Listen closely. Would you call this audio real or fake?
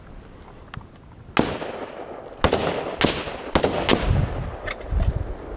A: real